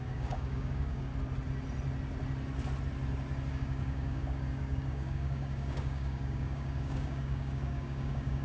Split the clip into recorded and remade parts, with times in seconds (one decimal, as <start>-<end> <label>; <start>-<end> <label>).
0.0-1.1 remade; 1.1-3.5 recorded; 3.5-8.4 remade